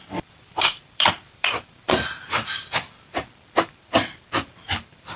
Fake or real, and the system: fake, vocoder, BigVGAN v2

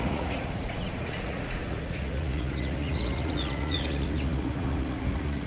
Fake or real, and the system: fake, vocoder, Vocos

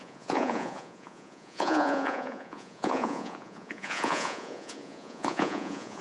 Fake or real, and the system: fake, vocoder, Vocos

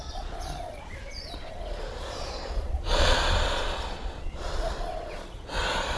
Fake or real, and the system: fake, vocoder, Vocos